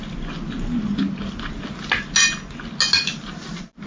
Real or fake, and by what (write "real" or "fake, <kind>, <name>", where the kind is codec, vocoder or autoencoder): real